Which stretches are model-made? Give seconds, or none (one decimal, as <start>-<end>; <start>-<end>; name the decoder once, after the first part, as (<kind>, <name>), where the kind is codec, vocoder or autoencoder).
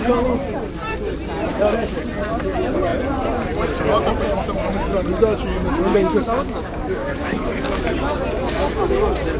1.5-2.0 (codec, DAC); 5.9-7.8